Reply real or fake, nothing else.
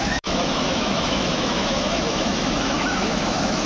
fake